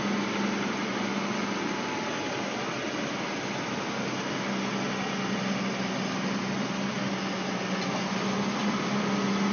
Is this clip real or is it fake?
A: real